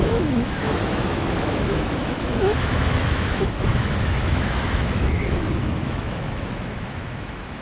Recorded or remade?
remade